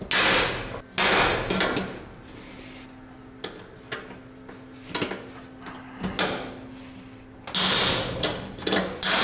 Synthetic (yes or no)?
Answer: no